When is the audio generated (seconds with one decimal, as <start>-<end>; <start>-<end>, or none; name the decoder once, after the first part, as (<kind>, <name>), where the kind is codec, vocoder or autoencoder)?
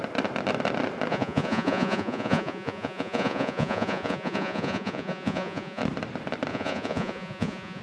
1.1-5.8 (vocoder, Vocos); 6.5-7.8